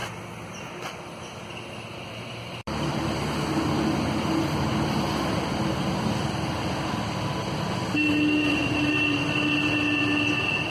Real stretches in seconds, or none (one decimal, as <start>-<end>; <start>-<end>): 0.0-10.7